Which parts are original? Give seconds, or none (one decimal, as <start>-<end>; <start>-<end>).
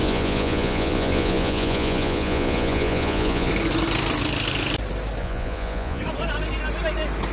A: 3.5-5.2; 6.0-7.3